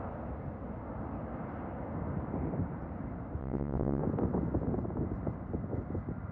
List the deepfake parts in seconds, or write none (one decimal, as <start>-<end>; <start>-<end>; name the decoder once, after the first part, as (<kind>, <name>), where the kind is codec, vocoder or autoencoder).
3.4-4.0 (vocoder, WaveNeXt)